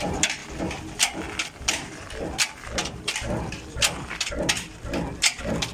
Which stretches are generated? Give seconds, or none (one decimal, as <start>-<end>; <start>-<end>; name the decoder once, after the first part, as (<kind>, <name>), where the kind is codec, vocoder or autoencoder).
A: none